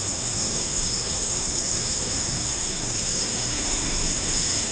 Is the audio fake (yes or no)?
yes